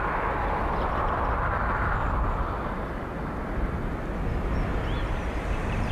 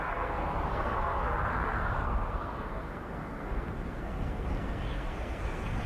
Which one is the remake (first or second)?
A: second